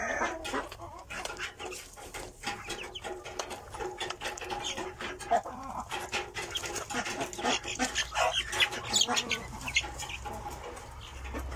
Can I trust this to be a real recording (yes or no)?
yes